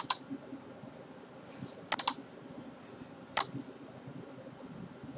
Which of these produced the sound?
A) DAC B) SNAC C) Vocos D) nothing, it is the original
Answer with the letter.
D